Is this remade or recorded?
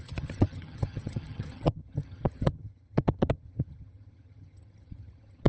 remade